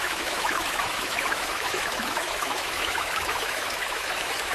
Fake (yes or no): yes